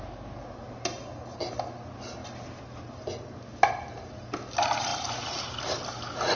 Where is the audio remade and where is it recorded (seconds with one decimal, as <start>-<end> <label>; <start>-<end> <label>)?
0.0-6.4 recorded